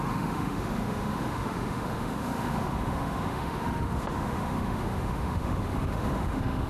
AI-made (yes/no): yes